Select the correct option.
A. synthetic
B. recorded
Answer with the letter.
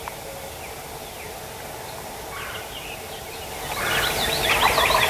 B